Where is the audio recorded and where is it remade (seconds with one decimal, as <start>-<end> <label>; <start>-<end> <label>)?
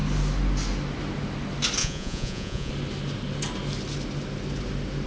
0.0-1.8 recorded; 1.8-2.7 remade; 2.7-5.1 recorded